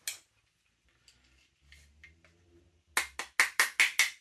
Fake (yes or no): no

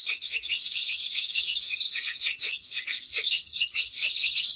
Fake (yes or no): yes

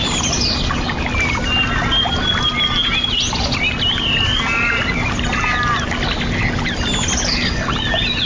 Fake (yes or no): no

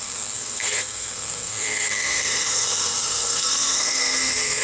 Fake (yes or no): yes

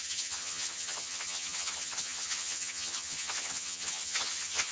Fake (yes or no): yes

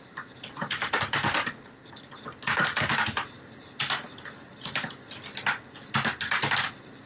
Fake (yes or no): no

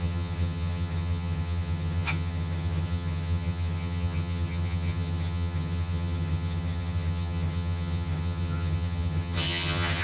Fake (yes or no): yes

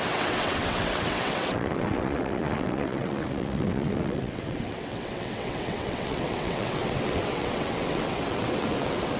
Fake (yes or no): yes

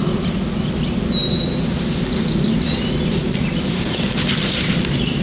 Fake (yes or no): no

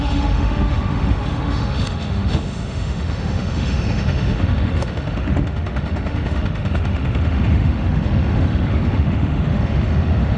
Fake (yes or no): yes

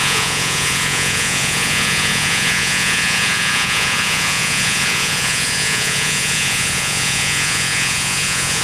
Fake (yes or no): yes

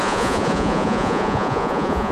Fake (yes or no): yes